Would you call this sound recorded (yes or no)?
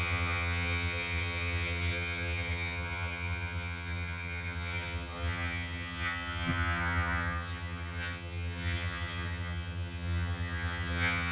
no